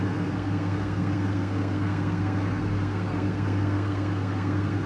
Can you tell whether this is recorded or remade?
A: remade